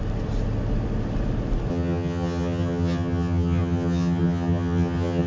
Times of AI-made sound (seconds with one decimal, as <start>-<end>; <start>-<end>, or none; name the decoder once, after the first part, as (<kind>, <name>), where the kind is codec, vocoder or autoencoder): 1.7-5.3 (vocoder, HiFi-GAN)